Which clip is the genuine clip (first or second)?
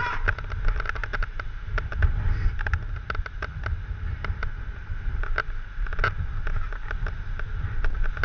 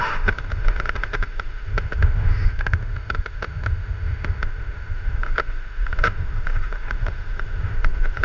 first